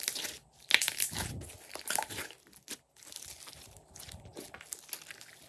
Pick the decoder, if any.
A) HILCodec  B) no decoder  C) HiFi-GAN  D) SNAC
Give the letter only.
B